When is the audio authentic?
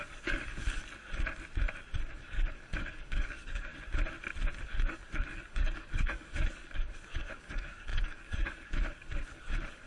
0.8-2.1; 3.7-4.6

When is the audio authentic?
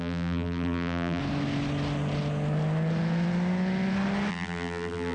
1.2-4.3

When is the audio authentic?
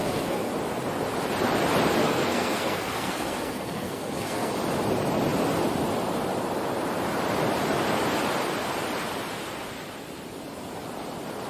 0.5-2.0; 4.5-11.5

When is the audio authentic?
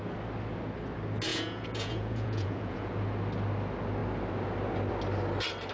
0.0-1.3; 2.9-5.7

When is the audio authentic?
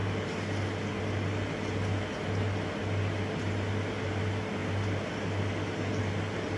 0.0-6.6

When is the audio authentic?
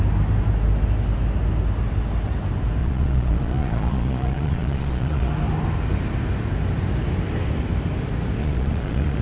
0.0-2.8; 5.3-8.4